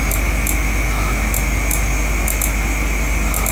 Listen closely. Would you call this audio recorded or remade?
recorded